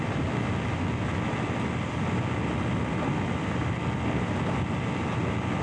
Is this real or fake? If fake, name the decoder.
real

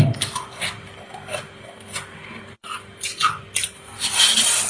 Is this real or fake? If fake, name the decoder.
real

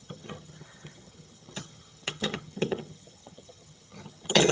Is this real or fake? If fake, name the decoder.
fake, vocoder, HiFi-GAN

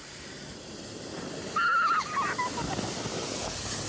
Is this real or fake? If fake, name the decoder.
real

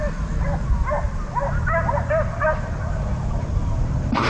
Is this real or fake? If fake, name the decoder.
real